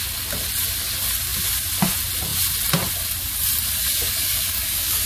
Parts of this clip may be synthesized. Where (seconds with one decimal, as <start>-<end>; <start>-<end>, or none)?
3.8-5.1